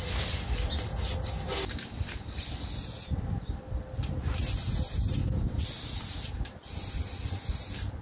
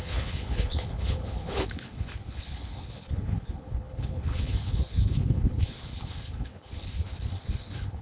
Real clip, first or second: first